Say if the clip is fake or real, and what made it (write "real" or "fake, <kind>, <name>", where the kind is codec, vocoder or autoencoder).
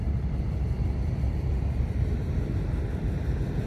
real